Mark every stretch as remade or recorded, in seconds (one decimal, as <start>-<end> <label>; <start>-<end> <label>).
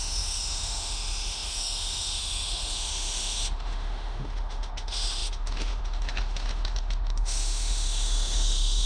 0.0-8.9 remade